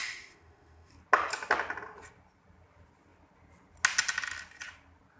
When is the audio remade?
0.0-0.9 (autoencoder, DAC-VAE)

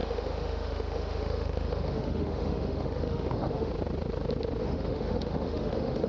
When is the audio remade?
0.0-3.7 (autoencoder, DAC-VAE); 4.6-6.1

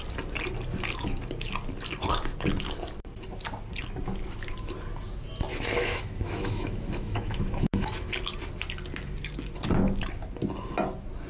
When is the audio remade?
5.5-8.1 (autoencoder, DAC-VAE)

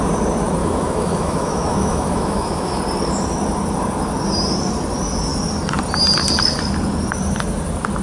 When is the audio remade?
0.6-2.8 (autoencoder, DAC-VAE)

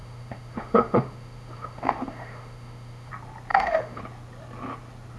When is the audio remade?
0.0-3.1 (autoencoder, DAC-VAE); 3.5-4.0